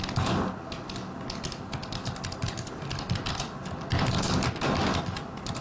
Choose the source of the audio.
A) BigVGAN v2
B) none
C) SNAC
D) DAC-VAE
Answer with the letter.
B